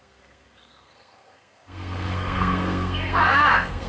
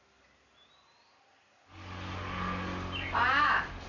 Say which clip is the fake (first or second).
first